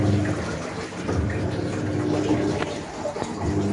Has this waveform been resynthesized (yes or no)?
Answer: no